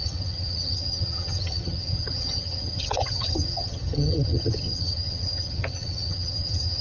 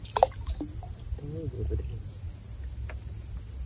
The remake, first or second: first